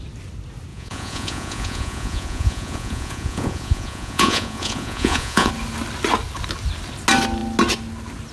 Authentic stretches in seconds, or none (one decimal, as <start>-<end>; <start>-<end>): 0.0-0.7; 5.5-8.3